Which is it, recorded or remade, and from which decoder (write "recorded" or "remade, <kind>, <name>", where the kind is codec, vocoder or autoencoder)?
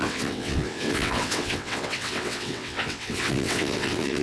remade, vocoder, WaveNeXt